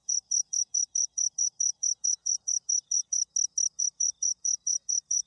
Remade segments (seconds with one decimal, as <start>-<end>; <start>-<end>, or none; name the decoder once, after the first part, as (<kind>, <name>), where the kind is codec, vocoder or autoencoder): 0.0-3.2 (vocoder, BigVGAN v2); 3.8-5.3